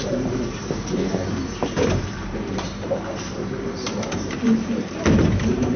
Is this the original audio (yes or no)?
no